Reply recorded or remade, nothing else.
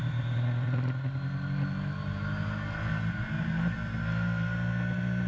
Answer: recorded